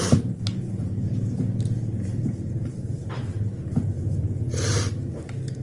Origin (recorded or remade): recorded